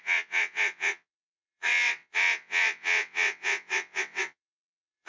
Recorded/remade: remade